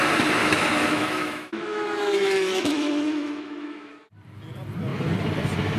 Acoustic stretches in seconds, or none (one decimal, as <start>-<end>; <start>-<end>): 0.0-0.4; 3.9-5.8